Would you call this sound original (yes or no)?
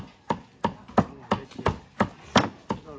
yes